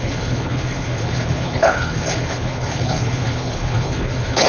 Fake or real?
fake